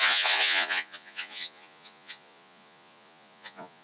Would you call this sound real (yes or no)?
no